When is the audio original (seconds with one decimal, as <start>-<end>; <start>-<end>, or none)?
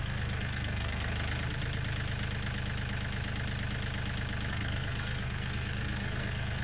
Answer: 1.1-4.5